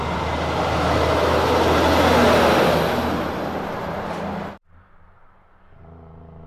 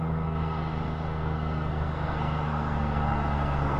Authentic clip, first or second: first